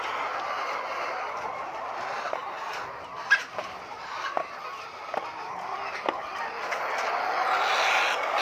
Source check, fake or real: real